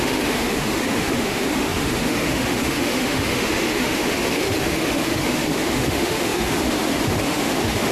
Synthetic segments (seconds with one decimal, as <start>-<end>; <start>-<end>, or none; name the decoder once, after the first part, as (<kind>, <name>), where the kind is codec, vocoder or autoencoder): 0.0-7.9 (autoencoder, DAC-VAE)